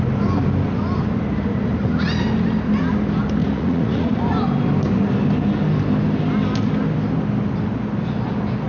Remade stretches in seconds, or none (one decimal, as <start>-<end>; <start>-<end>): 3.4-4.2